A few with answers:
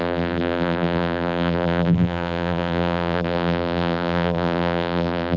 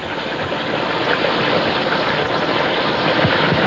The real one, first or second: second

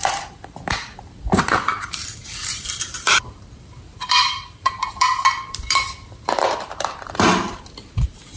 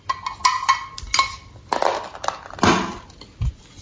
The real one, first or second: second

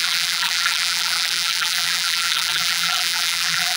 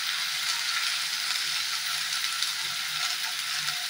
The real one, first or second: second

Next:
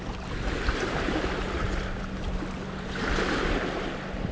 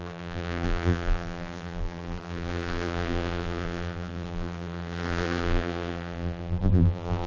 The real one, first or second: first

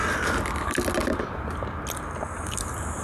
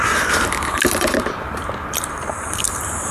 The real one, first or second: first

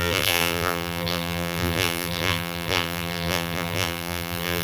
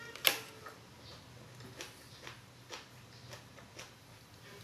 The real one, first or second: second